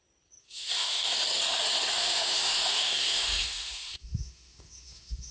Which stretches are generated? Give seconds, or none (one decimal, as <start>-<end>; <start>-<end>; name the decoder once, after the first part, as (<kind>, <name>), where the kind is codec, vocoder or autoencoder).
0.4-1.1 (autoencoder, DAC-VAE); 2.0-5.3

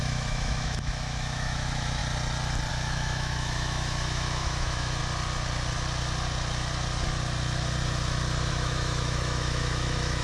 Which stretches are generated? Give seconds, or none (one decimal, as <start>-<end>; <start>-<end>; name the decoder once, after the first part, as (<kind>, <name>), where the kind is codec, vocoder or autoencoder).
0.0-2.0 (autoencoder, DAC-VAE); 2.7-5.0; 8.5-10.2

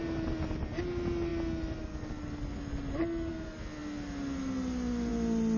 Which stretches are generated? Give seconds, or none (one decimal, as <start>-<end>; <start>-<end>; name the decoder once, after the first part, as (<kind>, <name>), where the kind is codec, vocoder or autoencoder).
none

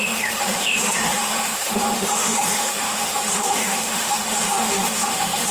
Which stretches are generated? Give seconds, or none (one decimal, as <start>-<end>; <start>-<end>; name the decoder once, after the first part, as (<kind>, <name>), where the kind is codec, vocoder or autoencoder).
0.0-5.5 (autoencoder, DAC-VAE)

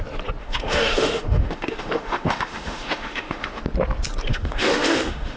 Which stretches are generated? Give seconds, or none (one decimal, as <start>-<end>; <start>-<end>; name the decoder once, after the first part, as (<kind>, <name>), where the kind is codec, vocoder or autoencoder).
0.4-3.6 (autoencoder, DAC-VAE); 4.3-5.4

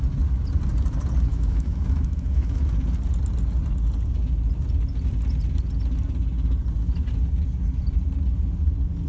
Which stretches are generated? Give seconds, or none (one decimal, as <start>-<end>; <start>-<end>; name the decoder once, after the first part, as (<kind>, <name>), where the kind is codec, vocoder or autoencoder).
1.3-2.6 (autoencoder, DAC-VAE)

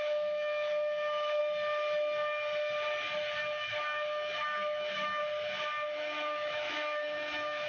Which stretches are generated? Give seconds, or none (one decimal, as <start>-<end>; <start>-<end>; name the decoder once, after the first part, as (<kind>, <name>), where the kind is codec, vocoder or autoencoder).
0.0-1.4 (autoencoder, DAC-VAE); 3.4-5.2; 6.0-7.7

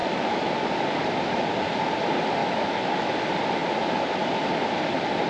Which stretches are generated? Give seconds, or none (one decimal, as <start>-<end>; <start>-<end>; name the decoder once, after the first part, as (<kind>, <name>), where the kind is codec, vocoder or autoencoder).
0.0-0.5 (autoencoder, DAC-VAE); 2.4-3.1